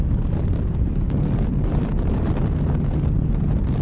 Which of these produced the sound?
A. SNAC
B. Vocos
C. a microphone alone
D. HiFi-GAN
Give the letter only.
C